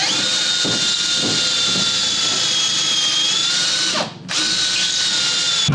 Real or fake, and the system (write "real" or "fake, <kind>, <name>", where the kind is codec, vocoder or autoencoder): real